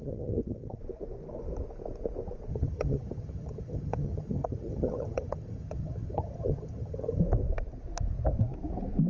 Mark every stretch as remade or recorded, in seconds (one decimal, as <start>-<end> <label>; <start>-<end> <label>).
0.0-0.8 remade; 0.8-2.5 recorded; 2.5-7.2 remade; 7.2-9.1 recorded